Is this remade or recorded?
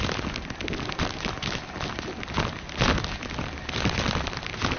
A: recorded